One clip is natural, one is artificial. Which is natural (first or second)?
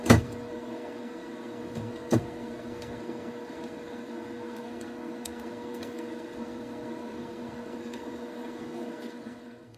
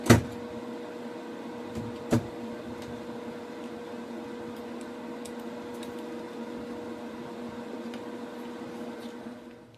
second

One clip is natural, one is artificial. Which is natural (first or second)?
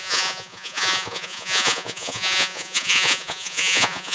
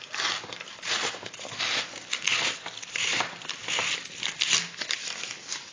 second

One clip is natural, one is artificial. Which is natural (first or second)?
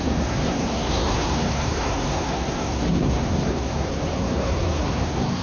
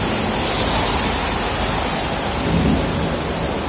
second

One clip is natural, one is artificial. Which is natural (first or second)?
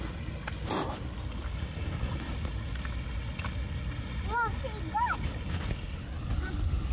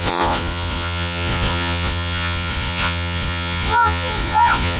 first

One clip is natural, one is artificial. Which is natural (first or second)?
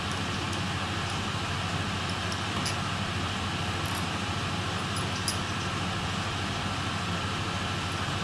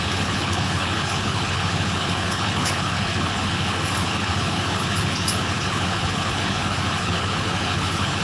first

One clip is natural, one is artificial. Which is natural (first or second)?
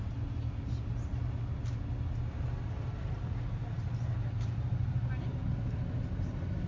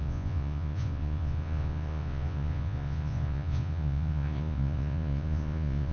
first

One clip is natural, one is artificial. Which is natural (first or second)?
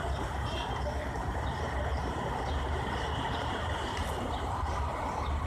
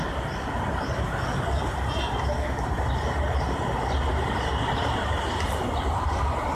second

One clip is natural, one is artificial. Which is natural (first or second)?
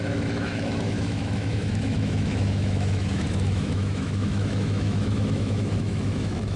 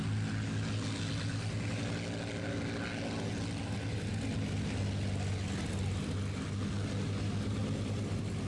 second